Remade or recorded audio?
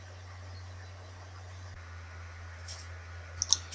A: recorded